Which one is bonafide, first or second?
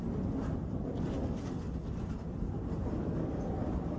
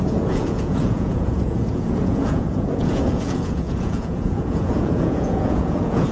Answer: first